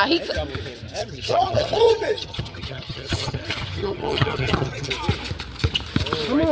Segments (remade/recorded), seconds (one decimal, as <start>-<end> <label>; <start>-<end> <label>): 0.0-1.0 recorded; 1.0-4.9 remade; 4.9-6.5 recorded